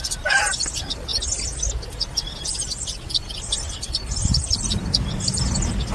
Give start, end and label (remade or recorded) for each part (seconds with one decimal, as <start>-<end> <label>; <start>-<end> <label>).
0.0-1.1 remade; 1.1-3.2 recorded; 3.2-5.9 remade